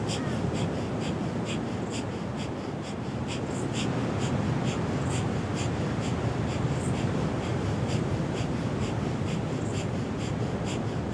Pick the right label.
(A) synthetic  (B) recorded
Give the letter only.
A